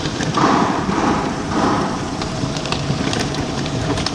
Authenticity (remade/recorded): remade